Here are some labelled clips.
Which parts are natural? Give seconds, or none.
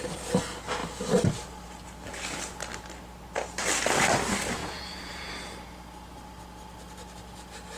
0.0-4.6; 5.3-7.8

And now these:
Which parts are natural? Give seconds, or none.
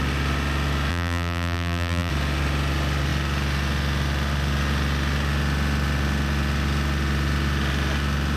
0.0-0.9; 2.1-8.4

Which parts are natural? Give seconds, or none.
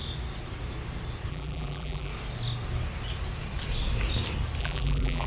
0.0-1.3; 2.1-4.6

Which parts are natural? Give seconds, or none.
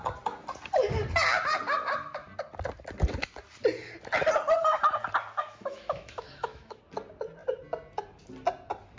0.0-5.4; 6.8-9.0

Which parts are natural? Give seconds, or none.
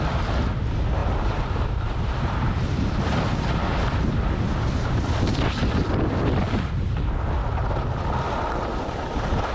0.0-1.0; 2.9-9.5